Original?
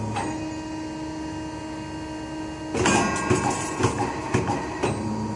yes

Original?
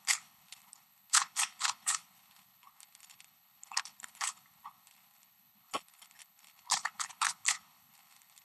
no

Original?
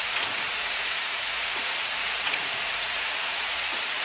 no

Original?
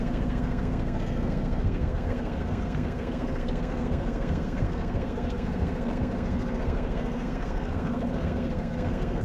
no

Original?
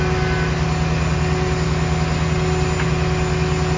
yes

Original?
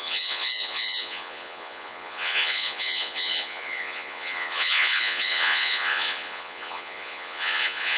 no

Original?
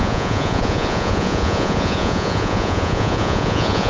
no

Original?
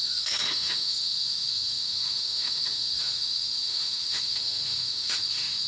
no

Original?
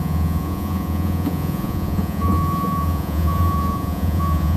no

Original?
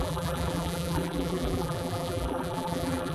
no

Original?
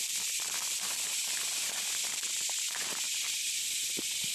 yes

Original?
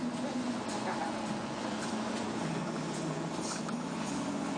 no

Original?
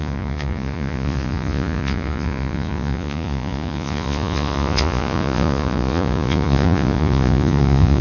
no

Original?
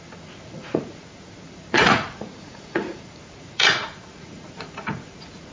no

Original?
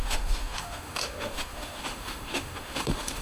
no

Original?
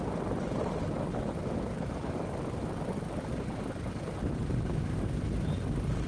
yes